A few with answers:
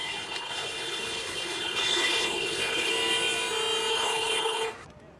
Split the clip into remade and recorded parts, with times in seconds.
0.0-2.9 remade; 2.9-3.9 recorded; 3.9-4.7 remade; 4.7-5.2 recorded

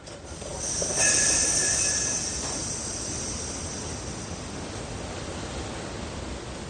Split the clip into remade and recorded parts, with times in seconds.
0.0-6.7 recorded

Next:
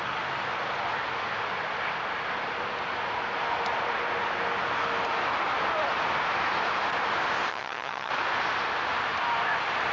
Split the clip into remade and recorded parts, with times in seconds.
0.0-7.5 recorded; 7.5-8.1 remade; 8.1-9.9 recorded

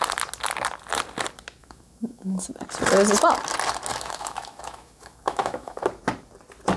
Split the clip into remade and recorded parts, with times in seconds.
0.0-1.6 recorded; 1.6-2.5 remade; 2.5-3.9 recorded; 3.9-5.8 remade; 5.8-6.8 recorded

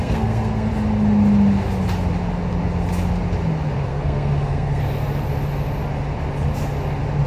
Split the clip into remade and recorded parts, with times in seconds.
0.0-0.7 remade; 0.7-3.9 recorded; 3.9-4.8 remade; 4.8-7.3 recorded

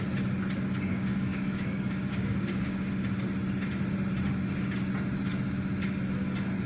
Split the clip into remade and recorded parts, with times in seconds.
0.0-0.9 recorded; 0.9-2.9 remade; 2.9-6.7 recorded